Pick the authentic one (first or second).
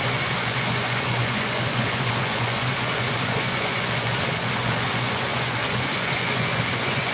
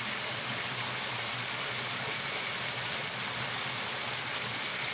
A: second